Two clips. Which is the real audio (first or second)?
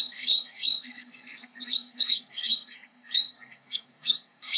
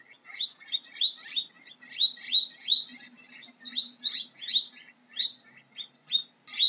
second